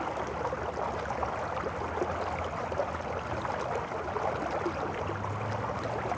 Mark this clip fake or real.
real